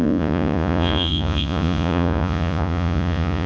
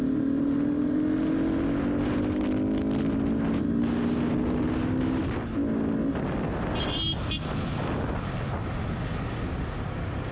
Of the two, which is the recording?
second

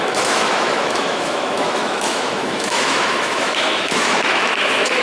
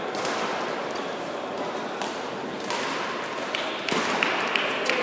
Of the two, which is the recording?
second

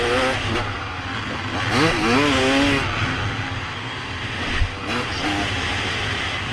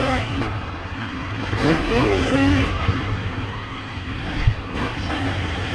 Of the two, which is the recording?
first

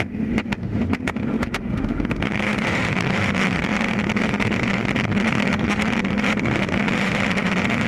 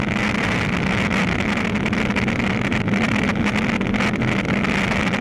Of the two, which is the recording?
second